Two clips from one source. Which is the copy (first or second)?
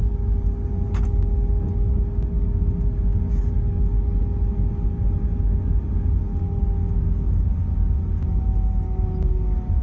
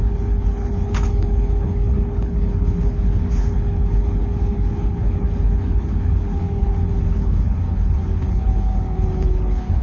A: second